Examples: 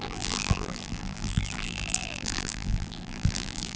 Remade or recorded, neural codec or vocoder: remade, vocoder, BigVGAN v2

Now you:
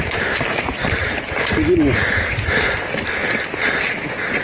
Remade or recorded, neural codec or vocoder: recorded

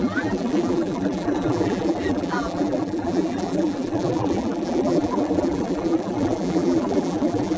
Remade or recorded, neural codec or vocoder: remade, vocoder, BigVGAN v2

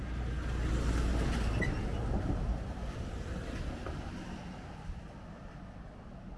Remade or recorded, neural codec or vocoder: recorded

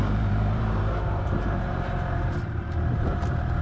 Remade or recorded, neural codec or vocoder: remade, vocoder, BigVGAN v2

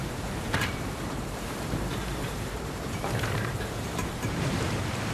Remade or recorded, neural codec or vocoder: remade, vocoder, BigVGAN v2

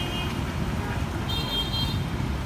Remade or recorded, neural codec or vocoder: recorded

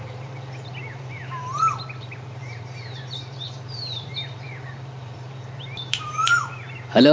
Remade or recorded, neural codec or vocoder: remade, vocoder, BigVGAN v2